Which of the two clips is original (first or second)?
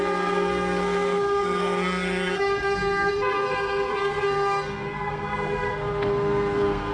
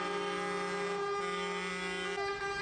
second